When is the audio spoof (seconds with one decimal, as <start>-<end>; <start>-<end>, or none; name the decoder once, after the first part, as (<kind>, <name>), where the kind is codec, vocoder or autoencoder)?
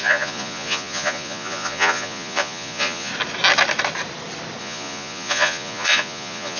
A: 0.0-3.1 (vocoder, Vocos); 4.6-6.6